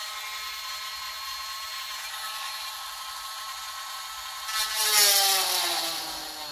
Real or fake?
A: real